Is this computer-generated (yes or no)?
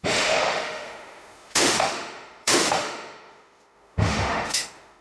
yes